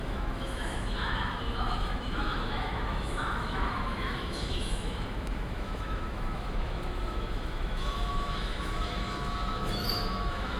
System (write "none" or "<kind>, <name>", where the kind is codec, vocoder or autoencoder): autoencoder, DAC-VAE